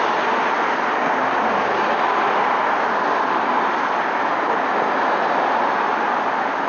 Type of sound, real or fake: real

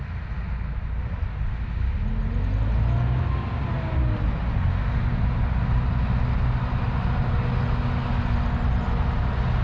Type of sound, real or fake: real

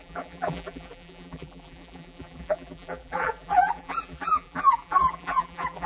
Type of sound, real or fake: fake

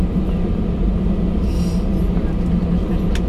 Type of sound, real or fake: real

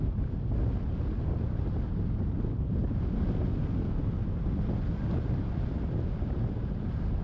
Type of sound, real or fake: real